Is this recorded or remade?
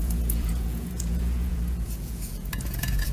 remade